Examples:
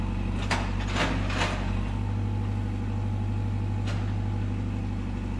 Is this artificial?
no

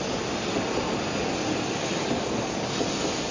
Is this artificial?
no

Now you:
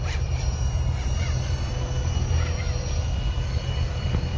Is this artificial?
no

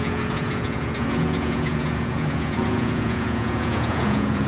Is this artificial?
yes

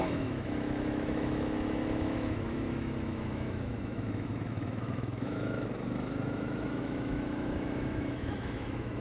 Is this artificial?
yes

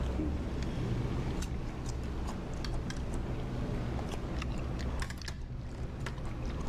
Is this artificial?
no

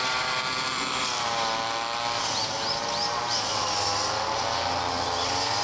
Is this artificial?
no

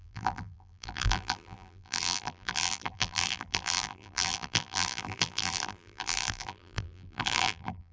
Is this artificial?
yes